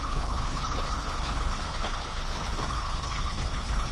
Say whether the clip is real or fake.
fake